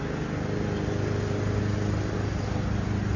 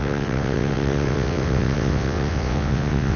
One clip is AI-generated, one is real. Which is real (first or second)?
first